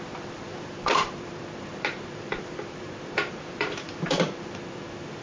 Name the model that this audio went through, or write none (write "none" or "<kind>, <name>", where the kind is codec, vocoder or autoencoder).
vocoder, BigVGAN v2